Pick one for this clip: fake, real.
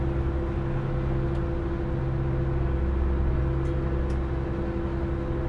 real